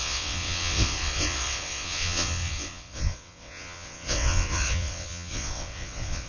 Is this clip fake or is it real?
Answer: fake